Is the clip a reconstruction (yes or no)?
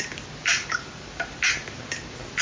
no